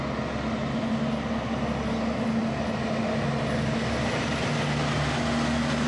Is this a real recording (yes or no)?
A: yes